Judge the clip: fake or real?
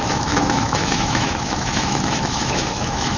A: fake